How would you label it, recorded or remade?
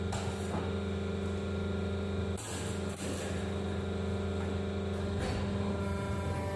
recorded